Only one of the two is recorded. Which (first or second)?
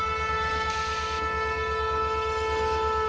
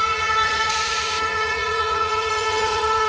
first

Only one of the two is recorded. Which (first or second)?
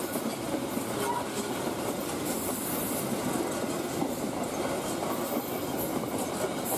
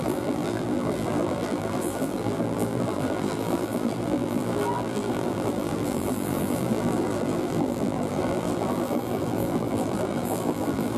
first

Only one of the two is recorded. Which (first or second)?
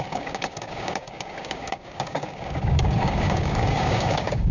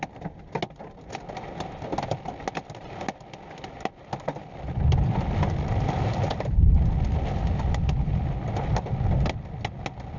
second